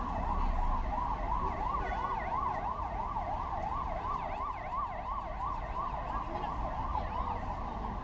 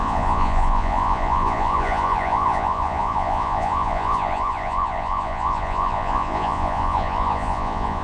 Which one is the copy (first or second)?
second